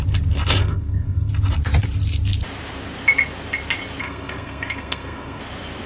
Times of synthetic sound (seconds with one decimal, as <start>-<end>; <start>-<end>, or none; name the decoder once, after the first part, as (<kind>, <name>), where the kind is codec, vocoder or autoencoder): 0.6-1.3 (codec, SNAC); 4.0-5.4